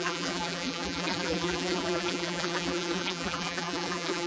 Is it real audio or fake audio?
fake